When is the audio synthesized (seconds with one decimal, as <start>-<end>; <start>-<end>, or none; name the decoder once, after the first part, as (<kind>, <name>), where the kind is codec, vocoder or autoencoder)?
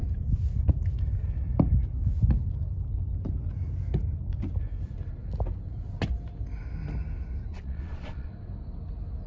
7.5-8.3 (vocoder, Vocos)